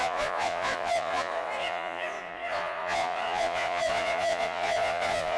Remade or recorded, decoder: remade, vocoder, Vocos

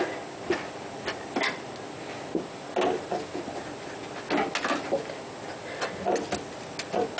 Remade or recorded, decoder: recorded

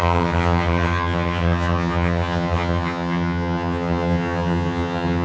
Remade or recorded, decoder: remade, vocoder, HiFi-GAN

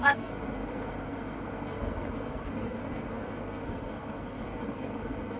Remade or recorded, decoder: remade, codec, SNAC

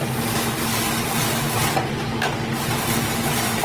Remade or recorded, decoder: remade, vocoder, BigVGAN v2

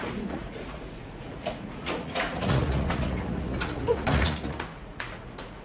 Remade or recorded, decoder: remade, vocoder, Vocos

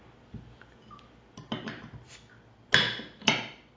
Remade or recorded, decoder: recorded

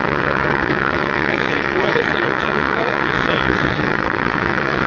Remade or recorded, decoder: remade, vocoder, WaveNeXt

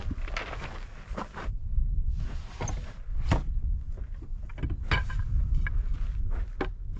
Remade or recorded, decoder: recorded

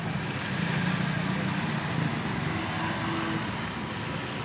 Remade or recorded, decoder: recorded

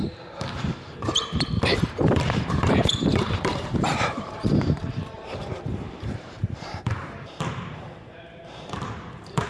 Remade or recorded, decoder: remade, vocoder, BigVGAN v2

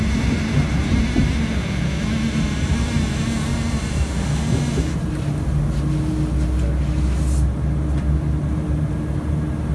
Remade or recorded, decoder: recorded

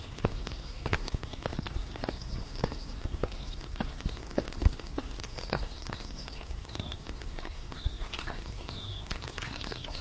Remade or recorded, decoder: remade, codec, SNAC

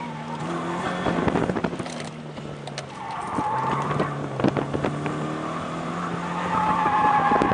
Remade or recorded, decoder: recorded